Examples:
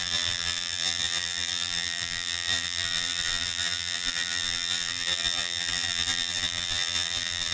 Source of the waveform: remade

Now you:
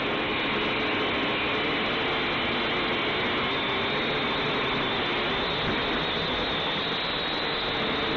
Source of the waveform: recorded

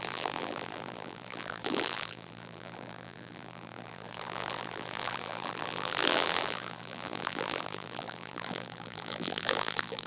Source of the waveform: remade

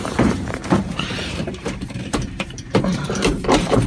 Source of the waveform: remade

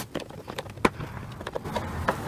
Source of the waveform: recorded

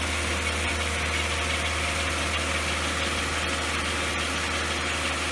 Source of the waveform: recorded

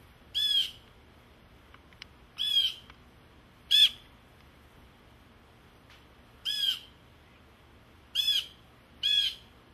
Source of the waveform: remade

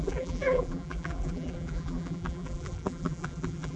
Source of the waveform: remade